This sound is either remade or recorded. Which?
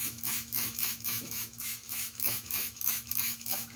remade